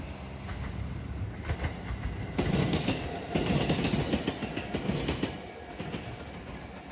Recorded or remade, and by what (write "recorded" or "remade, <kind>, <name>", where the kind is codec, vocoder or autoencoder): recorded